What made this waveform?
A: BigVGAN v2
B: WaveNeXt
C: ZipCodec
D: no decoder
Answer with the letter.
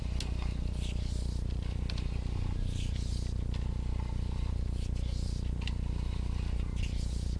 D